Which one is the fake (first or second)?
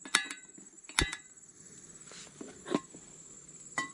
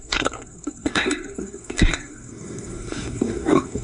second